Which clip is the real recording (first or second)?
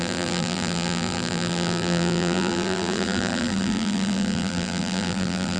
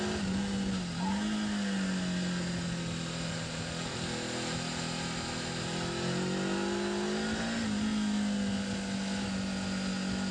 second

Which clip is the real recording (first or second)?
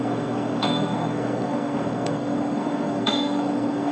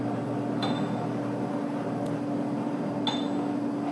second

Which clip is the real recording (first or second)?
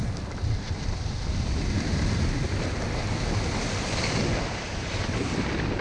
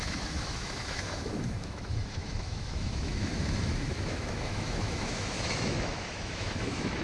first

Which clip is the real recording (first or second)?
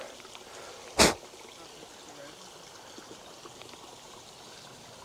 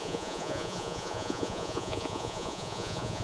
first